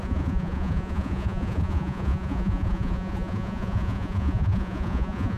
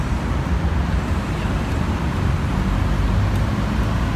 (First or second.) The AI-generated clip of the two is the first